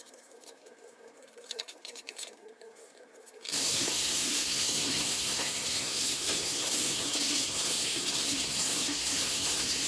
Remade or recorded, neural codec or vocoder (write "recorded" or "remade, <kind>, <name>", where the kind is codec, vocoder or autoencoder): remade, codec, SNAC